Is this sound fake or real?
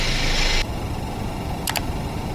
real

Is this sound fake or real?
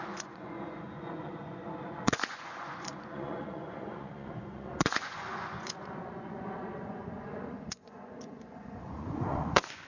fake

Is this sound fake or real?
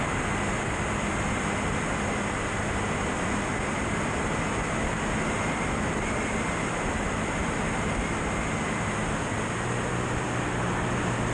real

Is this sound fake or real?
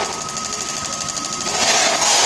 real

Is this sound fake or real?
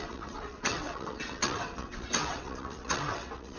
fake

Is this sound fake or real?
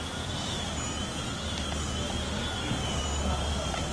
real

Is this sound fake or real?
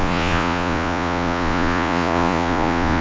fake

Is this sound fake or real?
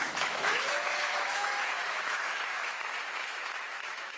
fake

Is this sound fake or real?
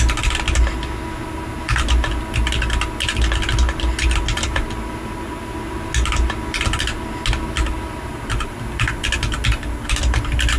real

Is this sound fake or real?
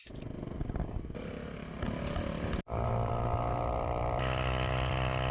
real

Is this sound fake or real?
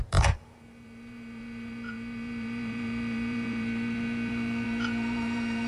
fake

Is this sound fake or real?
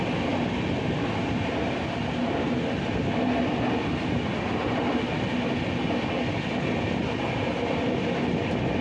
real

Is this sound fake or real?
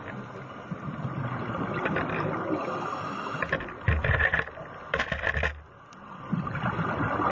fake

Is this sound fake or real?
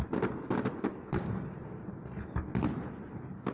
real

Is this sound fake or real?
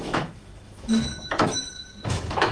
fake